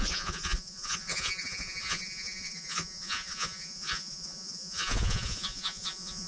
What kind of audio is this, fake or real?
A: fake